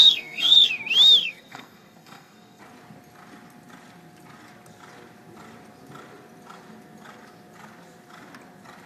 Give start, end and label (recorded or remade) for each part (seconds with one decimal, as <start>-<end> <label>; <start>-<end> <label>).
0.0-0.7 remade; 0.7-1.2 recorded; 1.2-2.6 remade; 2.6-8.9 recorded